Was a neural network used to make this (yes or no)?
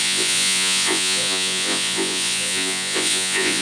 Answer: yes